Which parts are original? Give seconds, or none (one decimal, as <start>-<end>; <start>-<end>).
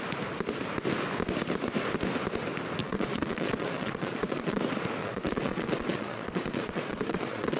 0.0-2.8; 4.6-5.0